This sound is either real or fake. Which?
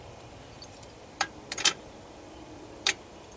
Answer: fake